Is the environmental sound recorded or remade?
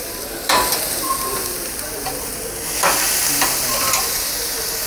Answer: remade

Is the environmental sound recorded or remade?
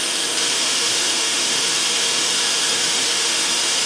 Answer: remade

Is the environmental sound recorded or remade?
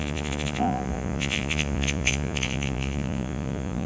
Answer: remade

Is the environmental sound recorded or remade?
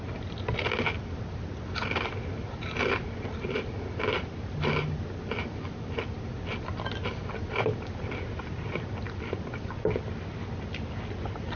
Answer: recorded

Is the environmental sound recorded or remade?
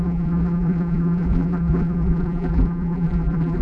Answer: remade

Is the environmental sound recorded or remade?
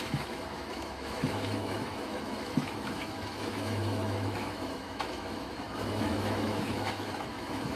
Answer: remade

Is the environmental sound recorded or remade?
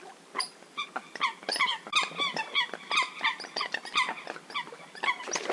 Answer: recorded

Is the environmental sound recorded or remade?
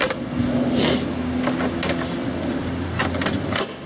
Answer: recorded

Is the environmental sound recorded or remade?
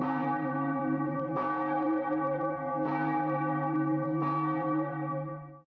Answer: remade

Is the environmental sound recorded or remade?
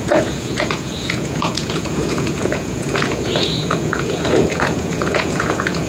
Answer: remade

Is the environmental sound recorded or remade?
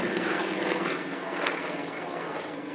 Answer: remade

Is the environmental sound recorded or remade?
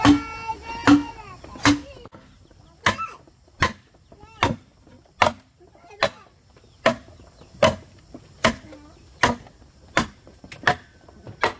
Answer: recorded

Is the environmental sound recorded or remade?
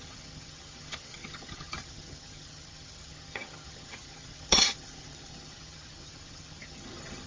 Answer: remade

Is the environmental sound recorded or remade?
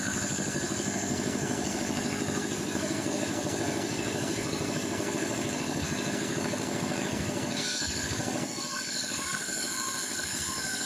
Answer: remade